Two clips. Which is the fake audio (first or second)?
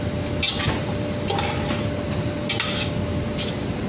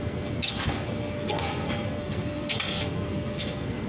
second